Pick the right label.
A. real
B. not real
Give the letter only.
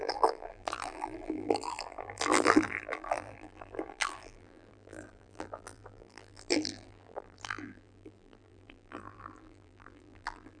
B